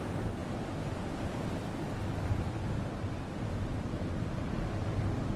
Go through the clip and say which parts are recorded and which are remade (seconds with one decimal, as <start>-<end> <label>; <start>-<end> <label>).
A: 0.0-5.4 recorded